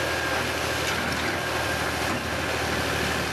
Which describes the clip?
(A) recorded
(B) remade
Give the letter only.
A